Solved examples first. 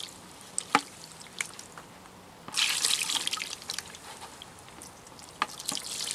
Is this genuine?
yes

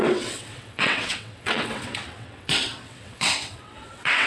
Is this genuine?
no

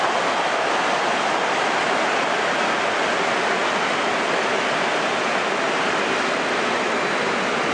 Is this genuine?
yes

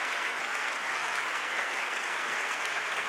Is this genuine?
no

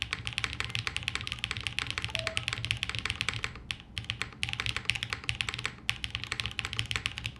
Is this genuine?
yes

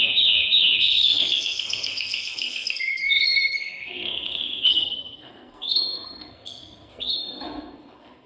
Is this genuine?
no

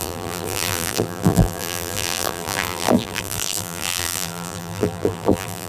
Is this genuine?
no